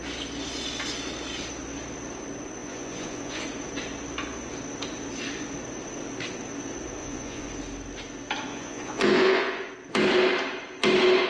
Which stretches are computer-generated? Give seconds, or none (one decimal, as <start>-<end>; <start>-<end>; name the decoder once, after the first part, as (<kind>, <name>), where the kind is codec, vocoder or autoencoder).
2.6-3.4 (vocoder, Vocos); 7.0-7.5; 8.5-9.7